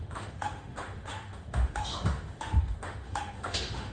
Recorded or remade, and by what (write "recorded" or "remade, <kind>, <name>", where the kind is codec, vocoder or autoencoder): remade, autoencoder, DAC-VAE